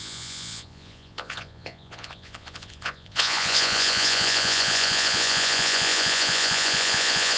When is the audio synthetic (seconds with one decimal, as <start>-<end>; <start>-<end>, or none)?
0.0-7.4